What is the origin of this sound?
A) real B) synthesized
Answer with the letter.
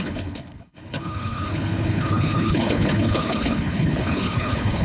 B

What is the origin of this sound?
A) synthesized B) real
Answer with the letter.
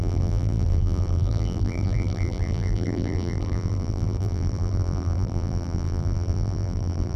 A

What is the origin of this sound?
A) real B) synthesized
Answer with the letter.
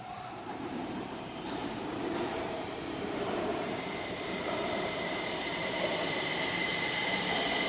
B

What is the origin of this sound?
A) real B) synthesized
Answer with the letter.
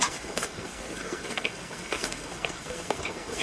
B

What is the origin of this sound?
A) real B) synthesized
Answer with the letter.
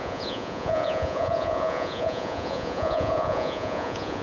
B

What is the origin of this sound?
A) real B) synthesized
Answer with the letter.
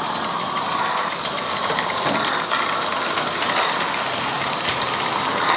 A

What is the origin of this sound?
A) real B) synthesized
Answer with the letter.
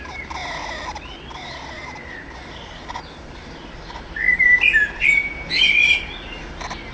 A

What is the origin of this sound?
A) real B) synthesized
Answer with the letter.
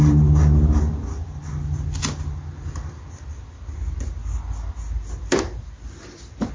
A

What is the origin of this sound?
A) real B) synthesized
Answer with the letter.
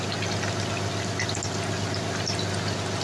A